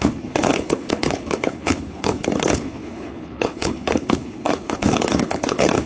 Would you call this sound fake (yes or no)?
yes